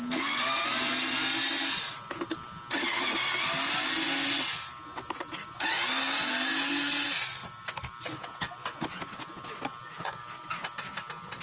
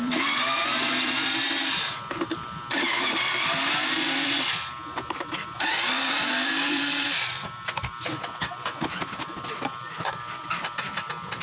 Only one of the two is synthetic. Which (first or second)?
second